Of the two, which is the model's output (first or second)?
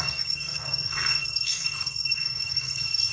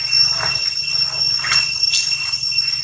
first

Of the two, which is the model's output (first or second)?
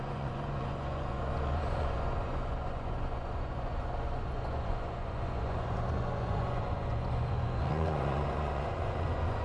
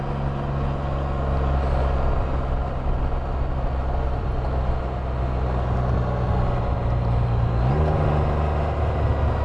first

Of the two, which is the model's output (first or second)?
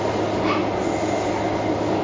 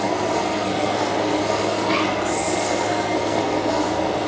second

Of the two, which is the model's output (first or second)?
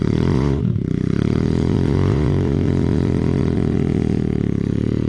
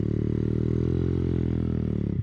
first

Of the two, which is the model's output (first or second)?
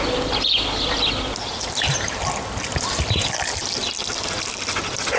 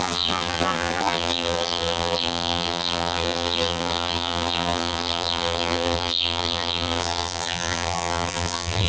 second